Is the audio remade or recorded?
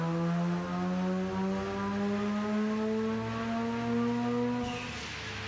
recorded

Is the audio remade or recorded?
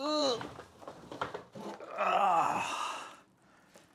remade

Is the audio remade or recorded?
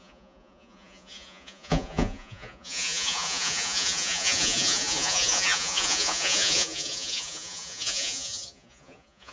remade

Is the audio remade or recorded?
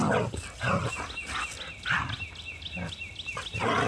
recorded